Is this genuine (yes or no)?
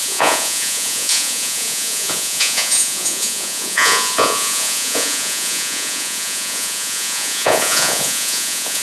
no